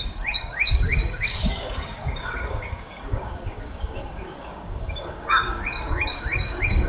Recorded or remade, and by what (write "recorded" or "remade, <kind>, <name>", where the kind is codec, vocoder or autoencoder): remade, codec, DAC